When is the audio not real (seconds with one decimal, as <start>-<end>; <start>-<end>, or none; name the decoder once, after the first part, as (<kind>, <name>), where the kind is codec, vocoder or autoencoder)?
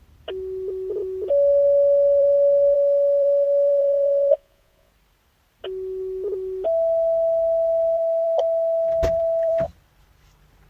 3.8-4.9 (vocoder, Vocos)